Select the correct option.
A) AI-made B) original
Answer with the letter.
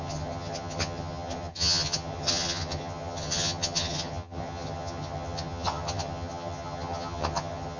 A